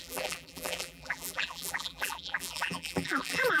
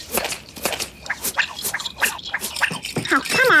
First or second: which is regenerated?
first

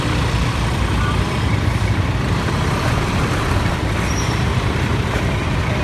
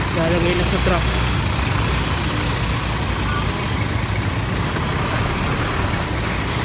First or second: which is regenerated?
first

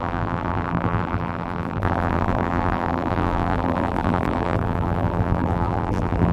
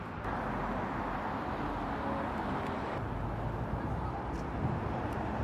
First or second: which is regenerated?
first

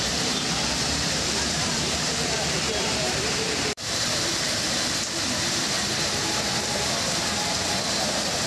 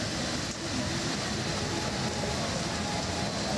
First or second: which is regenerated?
first